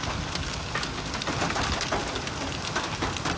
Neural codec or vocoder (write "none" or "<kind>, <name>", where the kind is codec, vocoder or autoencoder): none